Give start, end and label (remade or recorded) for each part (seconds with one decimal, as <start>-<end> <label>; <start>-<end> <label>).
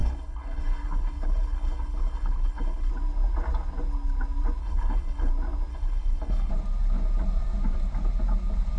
0.0-2.9 remade; 2.9-4.6 recorded; 4.6-5.3 remade; 5.3-5.7 recorded; 5.7-6.5 remade; 6.5-8.8 recorded